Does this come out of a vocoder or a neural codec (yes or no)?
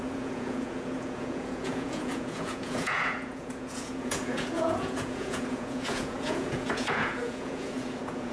yes